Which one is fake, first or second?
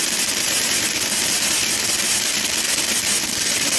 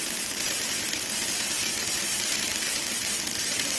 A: first